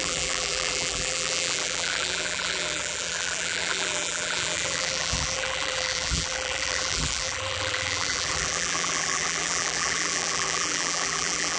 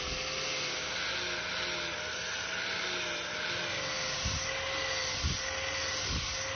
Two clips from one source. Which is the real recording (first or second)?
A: second